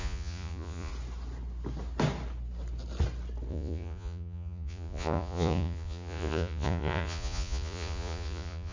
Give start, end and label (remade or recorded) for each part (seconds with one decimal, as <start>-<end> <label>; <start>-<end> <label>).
0.0-0.9 remade; 0.9-3.5 recorded; 3.5-8.7 remade